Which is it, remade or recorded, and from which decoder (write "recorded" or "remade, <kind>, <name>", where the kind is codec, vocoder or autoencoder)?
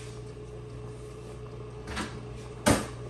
recorded